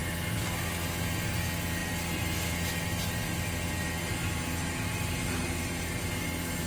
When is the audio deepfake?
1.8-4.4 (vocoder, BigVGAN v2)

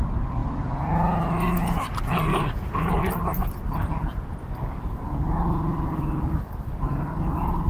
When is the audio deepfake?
2.3-2.9 (codec, DAC); 4.4-7.7

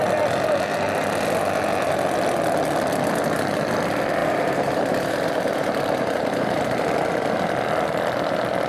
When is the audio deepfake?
4.2-6.6 (vocoder, BigVGAN v2)

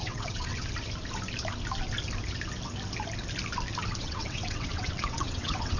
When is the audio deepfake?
0.0-0.5 (vocoder, WaveNeXt); 4.0-5.8

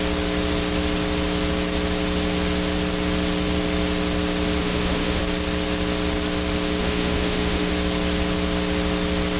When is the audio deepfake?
4.6-5.2 (autoencoder, DAC-VAE); 6.8-7.7

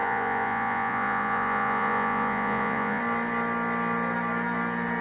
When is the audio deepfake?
0.0-3.0 (vocoder, Vocos)